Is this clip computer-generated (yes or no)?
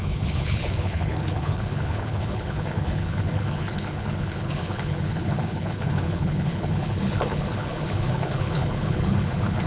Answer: yes